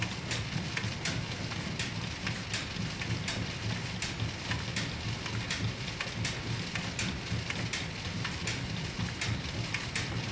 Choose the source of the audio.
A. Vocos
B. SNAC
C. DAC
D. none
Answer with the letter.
D